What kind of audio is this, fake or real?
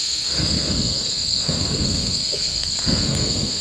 fake